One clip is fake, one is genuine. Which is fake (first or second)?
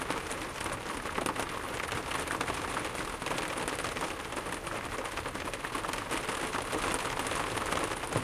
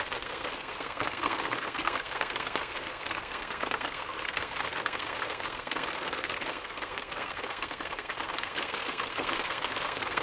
second